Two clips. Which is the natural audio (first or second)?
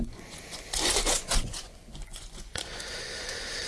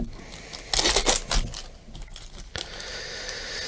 second